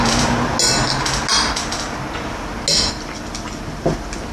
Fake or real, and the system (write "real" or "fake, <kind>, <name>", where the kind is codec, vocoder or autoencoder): real